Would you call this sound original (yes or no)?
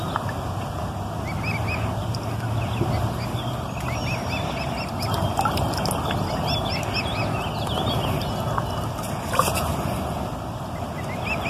yes